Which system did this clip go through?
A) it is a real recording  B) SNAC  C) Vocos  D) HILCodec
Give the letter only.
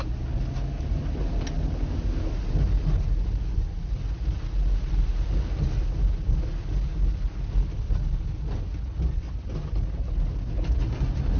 A